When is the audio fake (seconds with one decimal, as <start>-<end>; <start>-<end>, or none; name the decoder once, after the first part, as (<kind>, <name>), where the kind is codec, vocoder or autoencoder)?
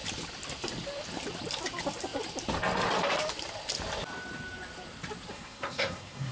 5.3-6.3 (codec, SNAC)